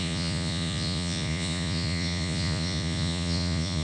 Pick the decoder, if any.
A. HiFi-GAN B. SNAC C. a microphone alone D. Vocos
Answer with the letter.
D